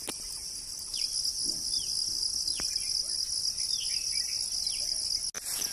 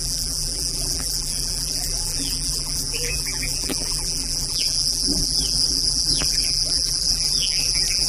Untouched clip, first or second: first